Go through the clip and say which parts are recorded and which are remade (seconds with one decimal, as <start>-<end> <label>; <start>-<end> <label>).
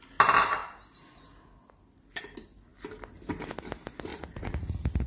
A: 0.0-4.1 recorded; 4.1-5.1 remade